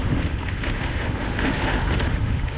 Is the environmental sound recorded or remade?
remade